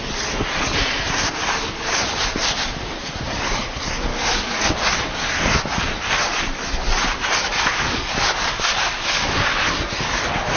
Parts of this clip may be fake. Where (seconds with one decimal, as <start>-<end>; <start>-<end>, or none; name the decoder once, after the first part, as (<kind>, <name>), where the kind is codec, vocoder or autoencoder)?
4.1-4.7 (codec, DAC); 7.4-9.3